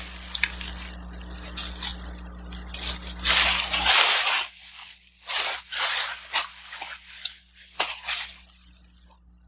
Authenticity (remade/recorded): recorded